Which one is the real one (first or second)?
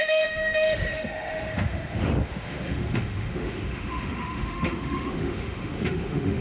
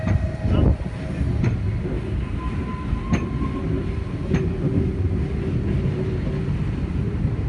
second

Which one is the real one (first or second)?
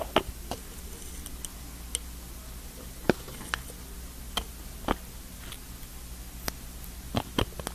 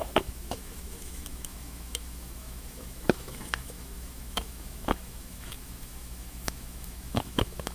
first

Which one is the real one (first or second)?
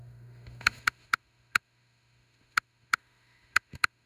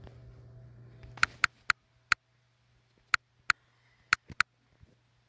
second